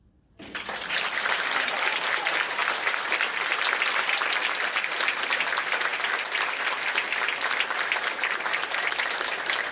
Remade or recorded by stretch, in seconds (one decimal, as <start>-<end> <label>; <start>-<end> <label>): 0.0-9.7 recorded